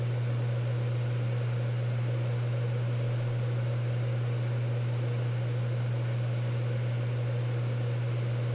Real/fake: real